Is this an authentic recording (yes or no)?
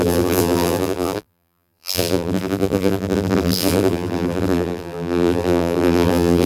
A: no